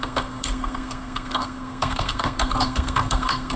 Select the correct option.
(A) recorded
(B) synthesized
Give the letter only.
B